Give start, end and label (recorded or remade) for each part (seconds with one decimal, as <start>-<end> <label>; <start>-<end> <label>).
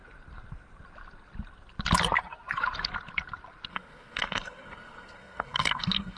0.0-3.7 recorded; 3.7-6.2 remade